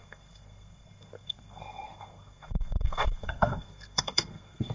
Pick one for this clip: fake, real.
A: fake